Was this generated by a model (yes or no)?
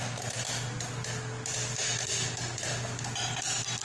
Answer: no